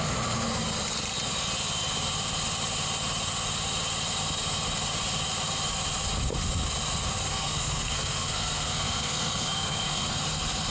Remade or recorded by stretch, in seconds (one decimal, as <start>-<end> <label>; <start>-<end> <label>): 0.0-7.3 recorded; 7.3-10.1 remade; 10.1-10.7 recorded